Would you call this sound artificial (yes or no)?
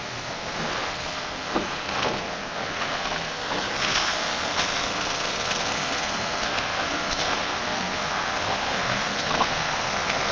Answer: yes